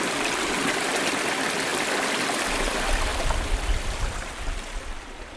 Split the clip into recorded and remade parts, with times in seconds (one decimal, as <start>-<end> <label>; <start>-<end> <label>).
0.0-5.4 recorded